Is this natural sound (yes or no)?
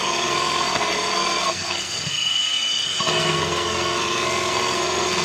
no